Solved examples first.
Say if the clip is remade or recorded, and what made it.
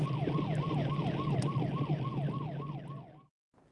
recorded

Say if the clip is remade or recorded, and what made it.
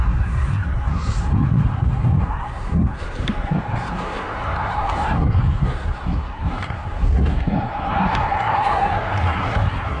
remade, codec, SNAC